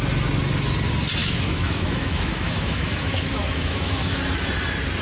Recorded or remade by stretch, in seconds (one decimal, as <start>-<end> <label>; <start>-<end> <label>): 0.0-1.2 recorded; 1.2-4.2 remade; 4.2-5.0 recorded